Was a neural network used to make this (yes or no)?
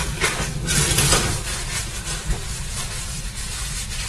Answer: no